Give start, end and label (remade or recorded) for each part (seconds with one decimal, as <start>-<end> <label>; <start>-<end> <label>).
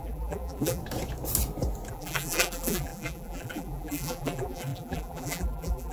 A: 0.0-0.8 remade; 0.8-1.9 recorded; 1.9-5.9 remade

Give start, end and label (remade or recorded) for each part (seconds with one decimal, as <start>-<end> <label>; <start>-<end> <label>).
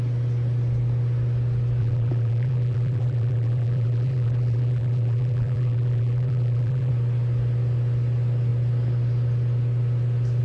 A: 0.0-1.8 recorded; 1.8-6.9 remade; 6.9-10.4 recorded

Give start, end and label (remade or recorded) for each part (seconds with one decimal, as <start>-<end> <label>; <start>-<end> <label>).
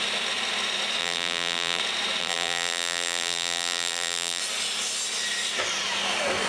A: 0.0-1.0 recorded; 1.0-1.8 remade; 1.8-2.2 recorded; 2.2-4.4 remade; 4.4-6.5 recorded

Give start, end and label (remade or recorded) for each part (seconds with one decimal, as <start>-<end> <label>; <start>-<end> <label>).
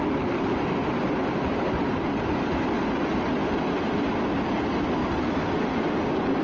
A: 0.0-3.8 remade; 3.8-5.0 recorded; 5.0-6.4 remade